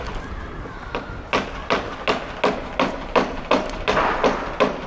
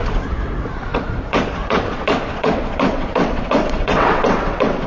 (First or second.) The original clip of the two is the first